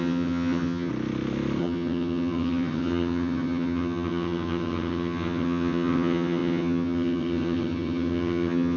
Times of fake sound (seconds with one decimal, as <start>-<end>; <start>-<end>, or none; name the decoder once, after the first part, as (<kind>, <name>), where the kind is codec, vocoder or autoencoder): 0.0-0.9 (vocoder, HiFi-GAN); 1.6-8.8